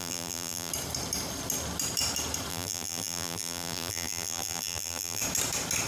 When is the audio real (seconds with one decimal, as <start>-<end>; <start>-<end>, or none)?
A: 0.7-2.5; 5.2-5.9